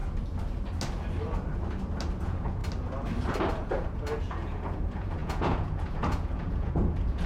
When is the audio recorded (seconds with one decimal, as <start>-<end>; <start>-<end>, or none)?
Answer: 0.0-2.2; 2.6-3.5